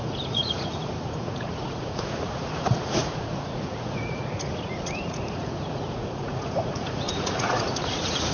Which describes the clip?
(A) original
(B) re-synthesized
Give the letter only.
B